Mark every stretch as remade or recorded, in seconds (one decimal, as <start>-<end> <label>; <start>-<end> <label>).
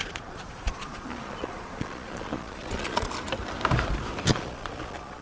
0.0-3.1 remade; 3.1-4.3 recorded; 4.3-5.2 remade